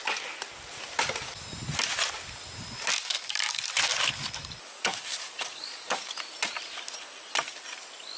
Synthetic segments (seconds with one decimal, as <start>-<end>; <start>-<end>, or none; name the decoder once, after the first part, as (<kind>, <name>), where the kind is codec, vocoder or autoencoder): 2.9-3.6 (codec, DAC); 4.7-6.1